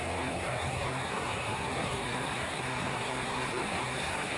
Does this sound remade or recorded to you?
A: remade